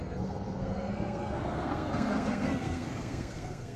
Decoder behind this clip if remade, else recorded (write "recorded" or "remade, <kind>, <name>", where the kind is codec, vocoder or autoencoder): remade, codec, SNAC